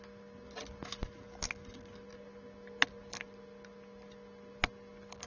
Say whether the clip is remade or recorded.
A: recorded